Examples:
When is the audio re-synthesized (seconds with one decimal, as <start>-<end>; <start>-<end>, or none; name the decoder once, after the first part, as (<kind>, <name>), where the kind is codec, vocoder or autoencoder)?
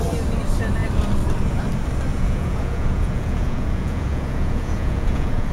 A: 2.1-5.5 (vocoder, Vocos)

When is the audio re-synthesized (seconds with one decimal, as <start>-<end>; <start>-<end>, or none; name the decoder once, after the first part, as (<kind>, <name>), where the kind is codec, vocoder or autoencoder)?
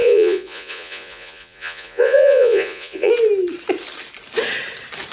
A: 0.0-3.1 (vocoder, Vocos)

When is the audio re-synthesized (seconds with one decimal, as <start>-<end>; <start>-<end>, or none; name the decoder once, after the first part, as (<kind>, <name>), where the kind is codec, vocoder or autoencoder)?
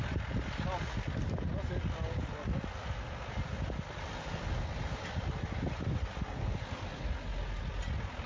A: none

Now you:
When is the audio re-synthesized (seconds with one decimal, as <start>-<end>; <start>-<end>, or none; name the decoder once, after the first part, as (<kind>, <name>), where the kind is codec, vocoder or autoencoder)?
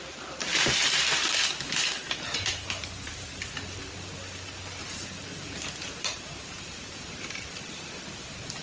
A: 0.5-2.7 (vocoder, BigVGAN v2); 4.8-7.5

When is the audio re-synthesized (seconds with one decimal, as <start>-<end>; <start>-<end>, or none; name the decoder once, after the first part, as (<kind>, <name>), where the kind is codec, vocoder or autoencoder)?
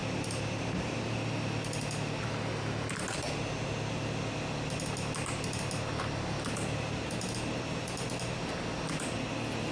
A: none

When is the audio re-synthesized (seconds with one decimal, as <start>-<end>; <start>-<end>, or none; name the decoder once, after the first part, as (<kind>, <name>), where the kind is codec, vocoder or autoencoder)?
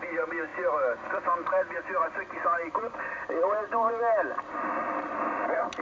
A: none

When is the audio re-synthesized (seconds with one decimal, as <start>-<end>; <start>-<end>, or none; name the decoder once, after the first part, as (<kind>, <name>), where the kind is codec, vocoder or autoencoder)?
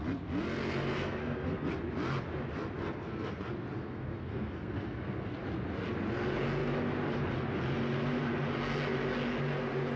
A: 0.9-1.7 (codec, SNAC); 2.8-3.4; 3.8-5.3